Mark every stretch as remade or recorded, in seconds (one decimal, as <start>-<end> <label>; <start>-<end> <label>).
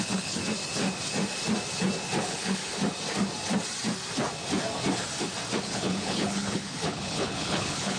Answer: 0.0-0.4 remade; 0.4-2.2 recorded; 2.2-2.6 remade; 2.6-5.6 recorded; 5.6-8.0 remade